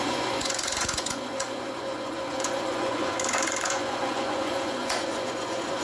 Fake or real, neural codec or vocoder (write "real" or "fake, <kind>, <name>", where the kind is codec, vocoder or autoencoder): fake, vocoder, Vocos